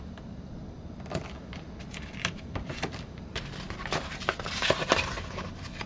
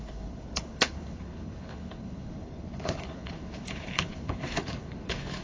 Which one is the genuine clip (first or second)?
first